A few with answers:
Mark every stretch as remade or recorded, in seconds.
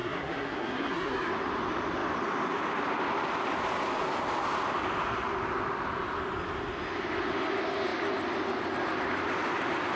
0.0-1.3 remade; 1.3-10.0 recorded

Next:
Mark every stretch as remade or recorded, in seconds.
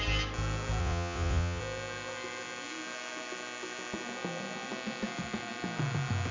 0.0-0.8 recorded; 0.8-1.6 remade; 1.6-6.3 recorded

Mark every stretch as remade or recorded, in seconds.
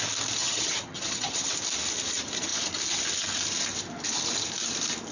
0.0-0.4 recorded; 0.4-1.5 remade; 1.5-5.1 recorded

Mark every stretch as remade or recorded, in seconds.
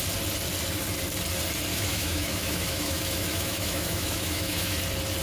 0.0-1.7 recorded; 1.7-4.8 remade; 4.8-5.2 recorded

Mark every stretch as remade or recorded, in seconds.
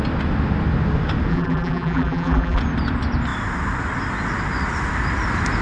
0.0-1.3 recorded; 1.3-2.6 remade; 2.6-5.6 recorded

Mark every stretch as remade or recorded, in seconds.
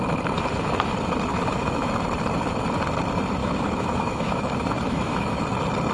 0.0-1.3 recorded; 1.3-1.9 remade; 1.9-3.4 recorded; 3.4-5.4 remade; 5.4-5.9 recorded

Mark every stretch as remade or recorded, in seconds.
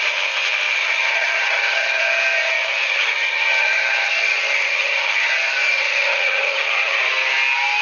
0.0-0.8 recorded; 0.8-2.0 remade; 2.0-2.6 recorded; 2.6-5.3 remade; 5.3-5.7 recorded; 5.7-7.0 remade; 7.0-7.8 recorded